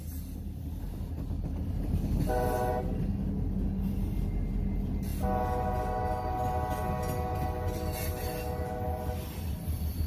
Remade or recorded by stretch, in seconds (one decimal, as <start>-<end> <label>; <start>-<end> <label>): 0.0-10.1 recorded